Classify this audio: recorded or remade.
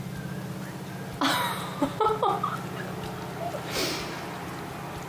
recorded